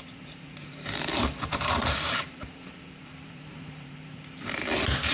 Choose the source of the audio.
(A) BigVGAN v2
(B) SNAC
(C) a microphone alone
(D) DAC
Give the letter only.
A